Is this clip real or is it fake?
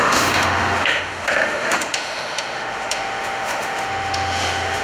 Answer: fake